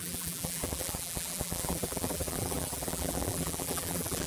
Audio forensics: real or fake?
fake